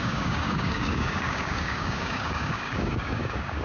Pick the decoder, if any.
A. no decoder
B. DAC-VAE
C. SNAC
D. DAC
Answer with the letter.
D